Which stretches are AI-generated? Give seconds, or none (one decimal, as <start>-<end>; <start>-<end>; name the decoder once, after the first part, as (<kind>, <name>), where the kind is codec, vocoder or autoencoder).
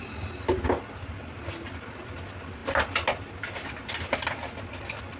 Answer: none